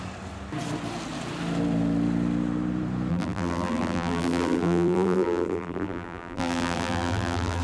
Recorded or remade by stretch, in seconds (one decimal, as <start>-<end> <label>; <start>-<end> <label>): 0.0-3.1 recorded; 3.1-7.6 remade